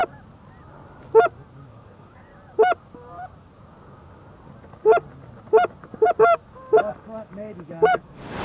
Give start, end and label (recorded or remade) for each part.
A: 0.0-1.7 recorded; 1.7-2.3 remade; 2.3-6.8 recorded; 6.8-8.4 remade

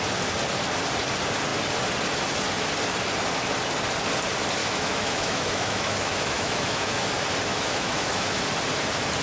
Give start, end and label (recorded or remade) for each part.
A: 0.0-4.6 recorded; 4.6-7.1 remade; 7.1-7.5 recorded; 7.5-8.4 remade; 8.4-9.2 recorded

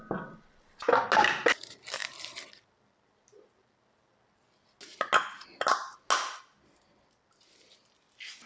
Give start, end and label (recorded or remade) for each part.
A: 0.0-8.5 recorded

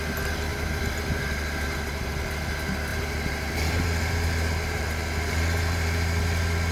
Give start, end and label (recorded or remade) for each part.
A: 0.0-0.5 recorded; 0.5-2.1 remade; 2.1-2.9 recorded; 2.9-6.2 remade; 6.2-6.7 recorded

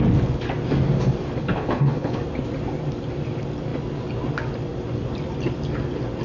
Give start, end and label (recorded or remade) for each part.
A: 0.0-1.4 recorded; 1.4-2.2 remade; 2.2-6.2 recorded